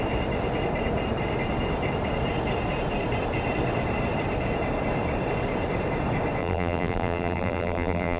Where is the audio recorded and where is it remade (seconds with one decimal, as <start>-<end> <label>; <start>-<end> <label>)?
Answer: 0.0-6.4 recorded; 6.4-8.2 remade